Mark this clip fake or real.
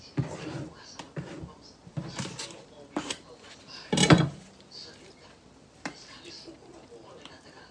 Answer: fake